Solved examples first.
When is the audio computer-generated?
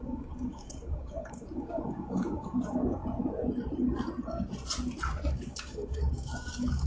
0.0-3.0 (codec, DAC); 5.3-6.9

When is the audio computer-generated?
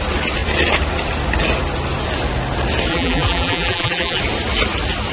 2.9-4.2 (vocoder, BigVGAN v2)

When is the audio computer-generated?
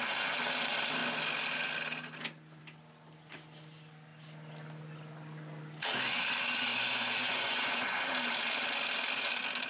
6.7-8.0 (vocoder, Vocos)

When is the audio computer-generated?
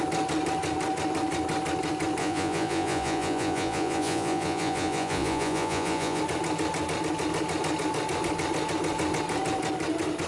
2.2-6.2 (vocoder, Vocos)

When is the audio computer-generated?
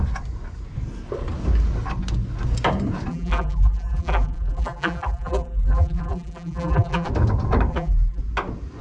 3.1-7.1 (vocoder, BigVGAN v2); 7.7-8.2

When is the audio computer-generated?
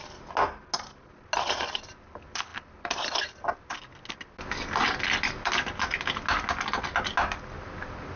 none